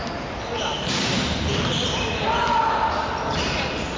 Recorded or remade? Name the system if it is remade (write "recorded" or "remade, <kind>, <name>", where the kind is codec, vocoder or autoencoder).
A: recorded